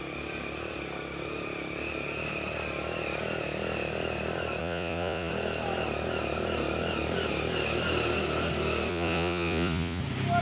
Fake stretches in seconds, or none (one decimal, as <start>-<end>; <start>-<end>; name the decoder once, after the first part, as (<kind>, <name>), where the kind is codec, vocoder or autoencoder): 4.6-5.3 (vocoder, Vocos); 8.9-10.0

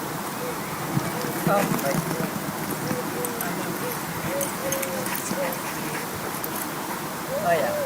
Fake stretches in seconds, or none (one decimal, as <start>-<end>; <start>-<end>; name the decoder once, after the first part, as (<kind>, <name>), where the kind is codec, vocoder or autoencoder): none

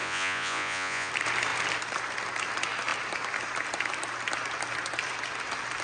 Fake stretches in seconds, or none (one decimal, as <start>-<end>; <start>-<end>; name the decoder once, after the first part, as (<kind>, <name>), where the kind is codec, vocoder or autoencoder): 0.0-1.1 (vocoder, Vocos)

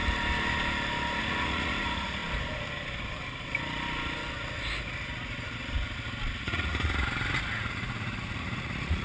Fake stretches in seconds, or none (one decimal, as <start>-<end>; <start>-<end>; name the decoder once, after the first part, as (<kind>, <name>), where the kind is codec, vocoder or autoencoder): 1.2-2.2 (vocoder, Vocos); 6.4-9.0